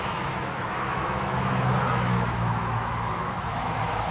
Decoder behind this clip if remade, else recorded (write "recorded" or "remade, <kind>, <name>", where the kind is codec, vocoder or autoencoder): remade, autoencoder, DAC-VAE